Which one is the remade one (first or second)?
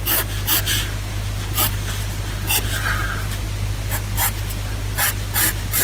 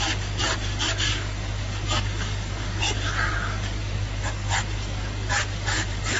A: second